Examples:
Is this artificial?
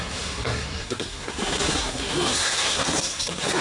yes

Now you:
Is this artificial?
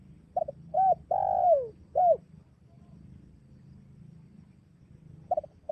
no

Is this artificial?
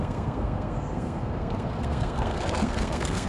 yes